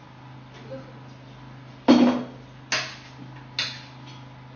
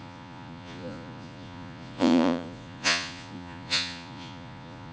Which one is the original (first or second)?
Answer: first